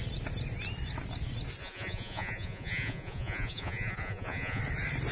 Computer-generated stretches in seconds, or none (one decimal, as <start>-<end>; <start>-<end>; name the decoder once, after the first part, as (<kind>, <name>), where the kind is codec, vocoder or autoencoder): 1.6-4.6 (vocoder, Vocos)